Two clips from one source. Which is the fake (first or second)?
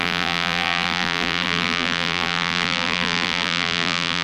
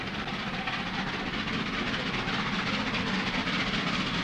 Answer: first